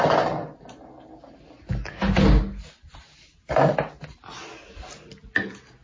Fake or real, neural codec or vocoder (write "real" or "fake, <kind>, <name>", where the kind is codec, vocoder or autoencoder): real